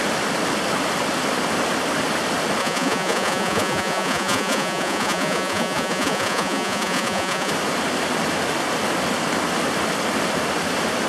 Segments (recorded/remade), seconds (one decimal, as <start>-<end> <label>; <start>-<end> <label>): 0.0-2.6 recorded; 2.6-7.5 remade; 7.5-11.1 recorded